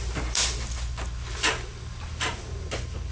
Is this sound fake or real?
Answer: real